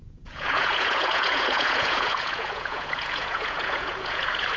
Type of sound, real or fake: fake